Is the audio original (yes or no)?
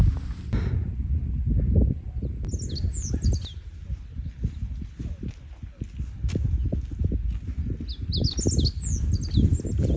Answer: yes